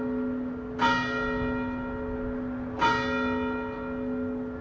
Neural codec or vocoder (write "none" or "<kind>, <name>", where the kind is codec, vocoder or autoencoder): none